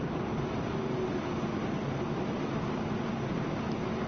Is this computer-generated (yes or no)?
no